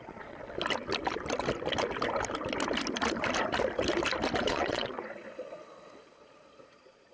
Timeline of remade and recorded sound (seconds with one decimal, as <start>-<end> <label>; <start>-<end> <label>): 0.0-0.4 remade; 0.4-4.4 recorded; 4.4-7.1 remade